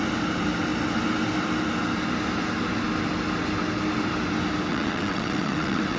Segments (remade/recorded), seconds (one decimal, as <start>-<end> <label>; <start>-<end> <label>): 0.0-4.7 recorded; 4.7-6.0 remade